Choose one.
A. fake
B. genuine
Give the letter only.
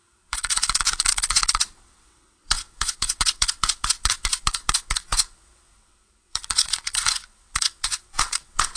A